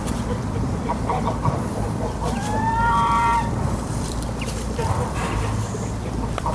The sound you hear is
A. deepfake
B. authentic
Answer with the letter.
A